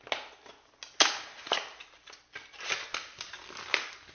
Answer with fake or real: real